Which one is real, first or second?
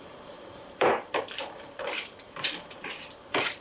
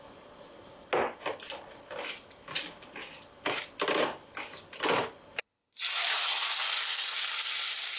second